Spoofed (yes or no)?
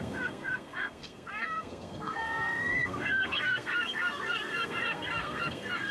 yes